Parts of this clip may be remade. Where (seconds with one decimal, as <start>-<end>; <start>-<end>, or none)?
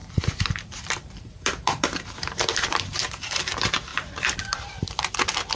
0.0-3.4; 3.9-5.1